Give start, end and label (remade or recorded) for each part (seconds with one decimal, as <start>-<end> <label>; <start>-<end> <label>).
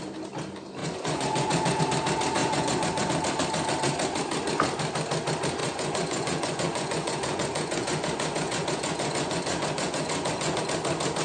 0.0-0.8 recorded; 0.8-1.8 remade; 1.8-2.4 recorded; 2.4-3.1 remade; 3.1-5.6 recorded; 5.6-10.6 remade; 10.6-11.2 recorded